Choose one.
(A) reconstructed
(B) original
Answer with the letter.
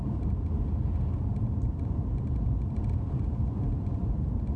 A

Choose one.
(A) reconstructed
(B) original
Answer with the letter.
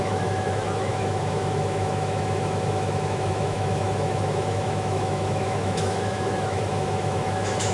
A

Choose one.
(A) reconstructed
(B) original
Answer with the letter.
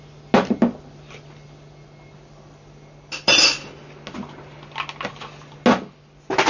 B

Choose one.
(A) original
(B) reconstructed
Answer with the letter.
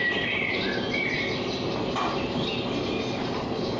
A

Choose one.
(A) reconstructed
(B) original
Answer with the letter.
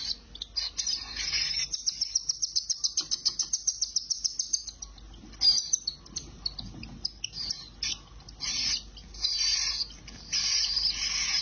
B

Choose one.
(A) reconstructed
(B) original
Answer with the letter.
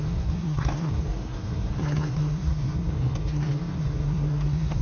A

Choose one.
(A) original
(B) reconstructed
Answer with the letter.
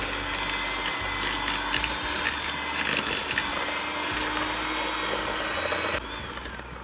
A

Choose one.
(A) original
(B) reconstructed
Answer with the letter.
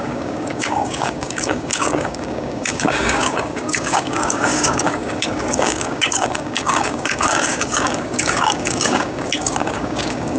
B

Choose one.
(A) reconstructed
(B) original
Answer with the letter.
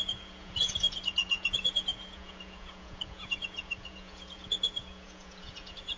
A